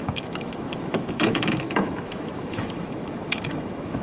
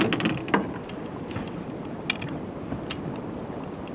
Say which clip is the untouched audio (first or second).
second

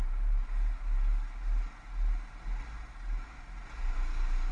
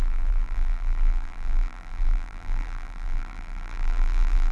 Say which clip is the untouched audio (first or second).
first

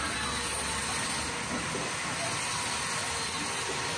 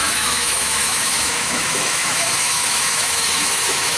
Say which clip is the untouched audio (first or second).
first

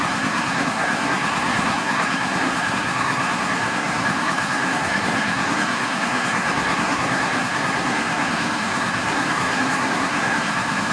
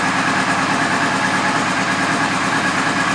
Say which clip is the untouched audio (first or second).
second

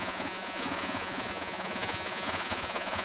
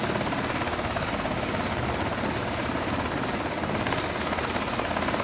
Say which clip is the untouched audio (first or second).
second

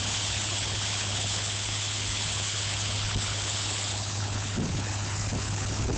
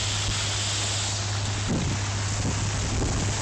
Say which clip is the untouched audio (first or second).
second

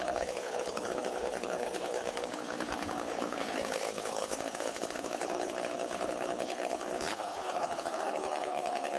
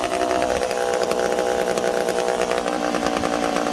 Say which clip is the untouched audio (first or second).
second